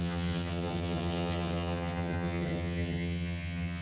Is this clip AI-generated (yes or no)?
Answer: yes